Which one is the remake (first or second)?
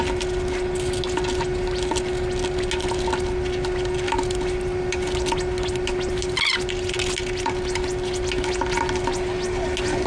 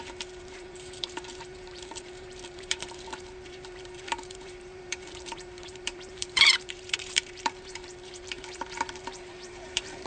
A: second